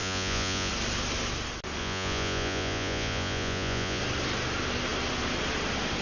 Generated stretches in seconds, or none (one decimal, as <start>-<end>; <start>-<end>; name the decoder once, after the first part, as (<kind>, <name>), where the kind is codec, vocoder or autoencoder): 0.0-0.7 (vocoder, Vocos); 1.8-4.0